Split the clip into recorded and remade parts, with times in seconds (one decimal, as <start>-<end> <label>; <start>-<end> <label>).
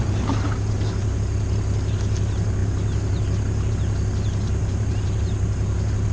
0.0-4.6 recorded; 4.6-6.1 remade